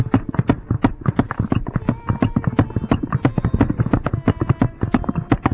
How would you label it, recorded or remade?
recorded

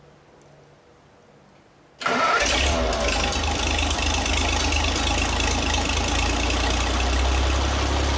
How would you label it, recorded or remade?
recorded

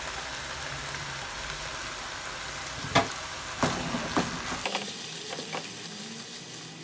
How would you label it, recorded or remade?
recorded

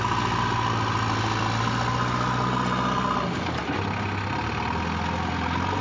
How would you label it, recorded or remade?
recorded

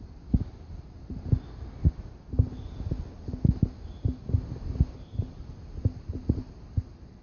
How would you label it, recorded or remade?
recorded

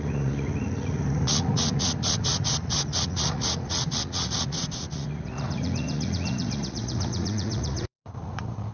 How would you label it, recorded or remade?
remade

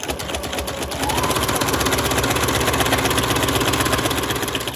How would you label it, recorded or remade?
recorded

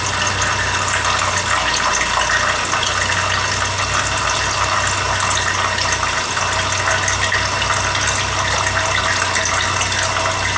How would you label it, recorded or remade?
recorded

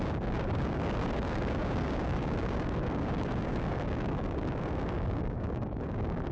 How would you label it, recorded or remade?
remade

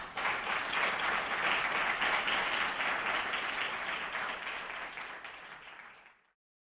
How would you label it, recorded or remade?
recorded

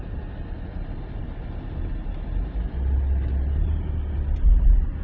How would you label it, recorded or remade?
recorded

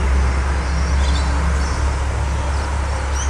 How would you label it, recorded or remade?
recorded